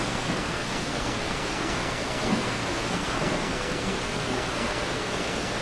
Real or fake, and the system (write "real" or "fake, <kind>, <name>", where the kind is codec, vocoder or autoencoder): fake, codec, SNAC